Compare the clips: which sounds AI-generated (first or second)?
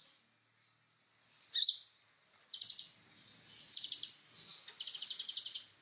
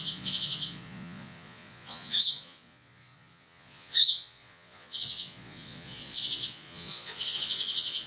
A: second